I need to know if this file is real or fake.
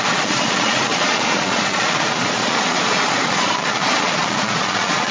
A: fake